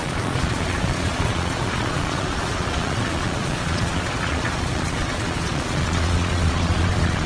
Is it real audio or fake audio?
fake